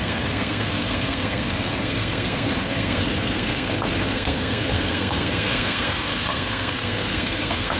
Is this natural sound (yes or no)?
no